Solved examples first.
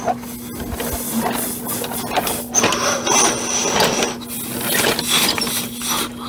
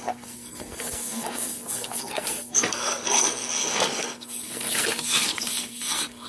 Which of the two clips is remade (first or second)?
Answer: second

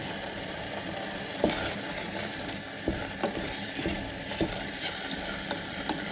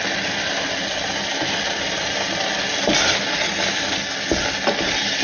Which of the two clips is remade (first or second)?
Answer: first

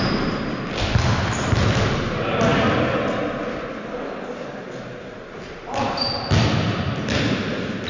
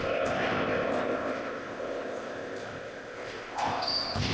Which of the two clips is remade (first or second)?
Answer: second